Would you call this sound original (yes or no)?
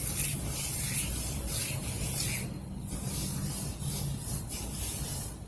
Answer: yes